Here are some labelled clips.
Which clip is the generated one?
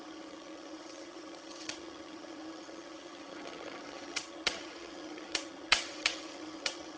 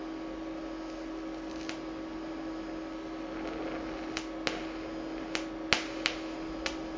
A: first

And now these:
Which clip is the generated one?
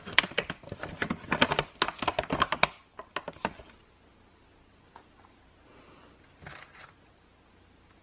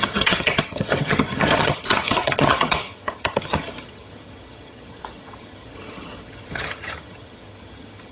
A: second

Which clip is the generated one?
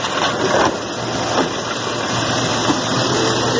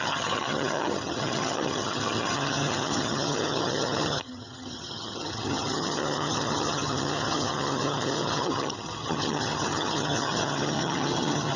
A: second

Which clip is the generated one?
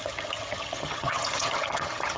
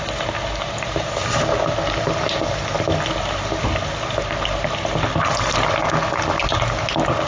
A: first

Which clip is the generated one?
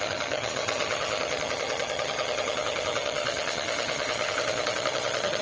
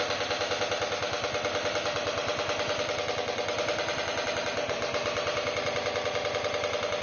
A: first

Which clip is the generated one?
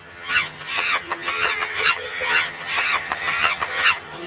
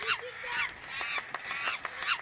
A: first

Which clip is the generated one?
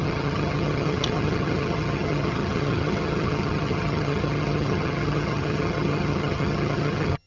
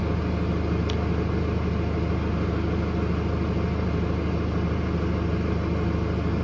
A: first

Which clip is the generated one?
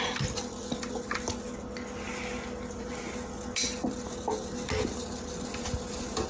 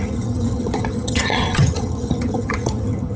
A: second